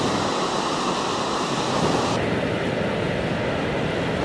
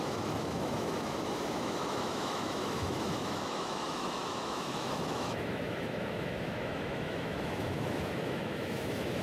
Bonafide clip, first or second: first